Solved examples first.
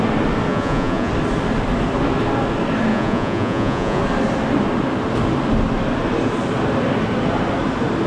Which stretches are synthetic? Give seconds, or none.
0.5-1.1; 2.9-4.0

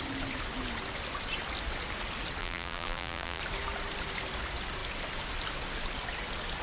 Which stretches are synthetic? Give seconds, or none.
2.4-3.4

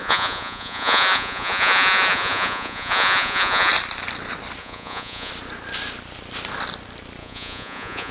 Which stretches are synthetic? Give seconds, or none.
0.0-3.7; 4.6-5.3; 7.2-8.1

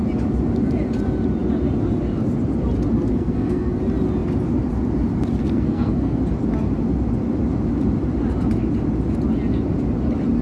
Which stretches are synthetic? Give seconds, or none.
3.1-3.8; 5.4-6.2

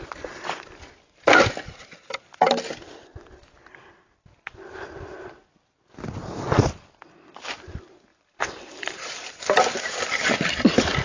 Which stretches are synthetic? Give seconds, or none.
8.1-9.4

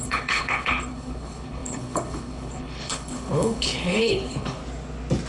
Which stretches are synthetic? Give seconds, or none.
0.0-4.6

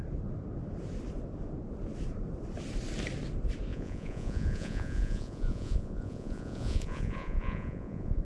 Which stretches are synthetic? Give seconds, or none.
3.7-8.2

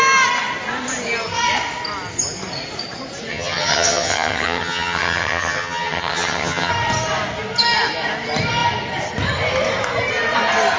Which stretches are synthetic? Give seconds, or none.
3.3-6.7